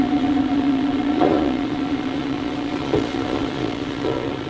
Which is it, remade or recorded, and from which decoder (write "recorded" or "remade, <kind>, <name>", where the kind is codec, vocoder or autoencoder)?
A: remade, vocoder, Vocos